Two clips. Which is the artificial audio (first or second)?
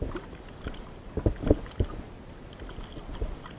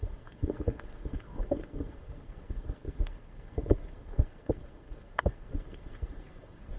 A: second